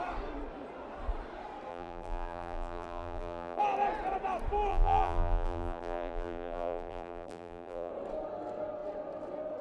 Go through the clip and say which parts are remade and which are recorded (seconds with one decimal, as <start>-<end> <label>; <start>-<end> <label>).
0.0-1.7 recorded; 1.7-3.6 remade; 3.6-4.7 recorded; 4.7-7.9 remade; 7.9-9.6 recorded